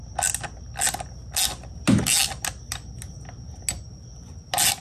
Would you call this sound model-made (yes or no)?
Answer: no